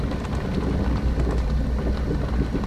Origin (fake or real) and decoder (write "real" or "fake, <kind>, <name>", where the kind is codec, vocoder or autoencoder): real